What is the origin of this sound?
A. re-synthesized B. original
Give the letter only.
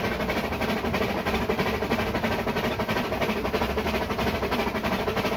B